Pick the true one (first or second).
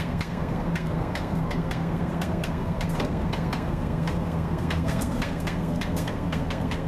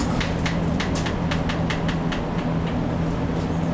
second